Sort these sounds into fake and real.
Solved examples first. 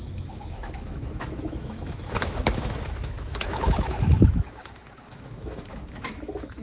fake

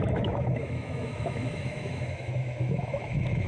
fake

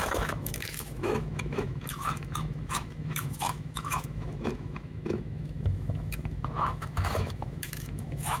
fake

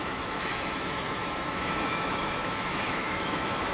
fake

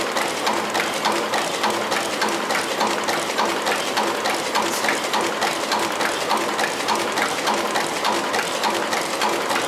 real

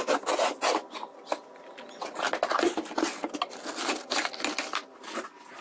real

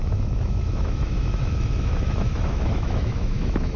fake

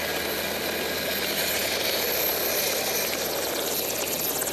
real